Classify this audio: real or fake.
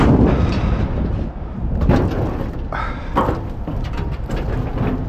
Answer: real